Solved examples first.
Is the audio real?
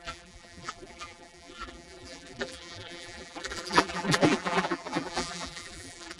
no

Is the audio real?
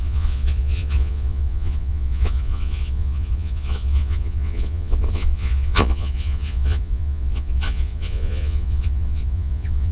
no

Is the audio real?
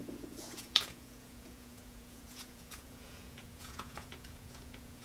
no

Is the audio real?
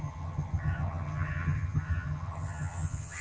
no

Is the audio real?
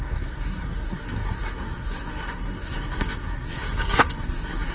no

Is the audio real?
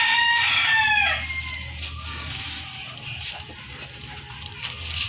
yes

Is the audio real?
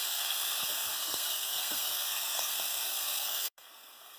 no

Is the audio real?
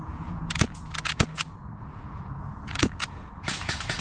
no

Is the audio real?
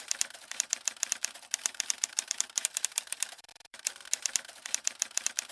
no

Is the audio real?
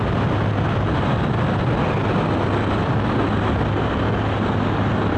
yes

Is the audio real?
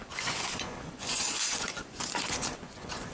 no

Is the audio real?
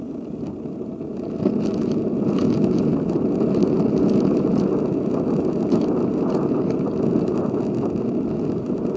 yes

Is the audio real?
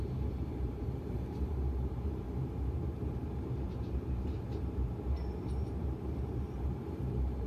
no